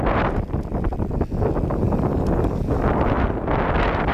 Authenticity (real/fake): real